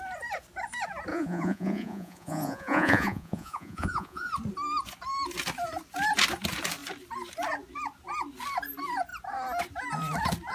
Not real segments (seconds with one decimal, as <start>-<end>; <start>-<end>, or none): 1.1-4.3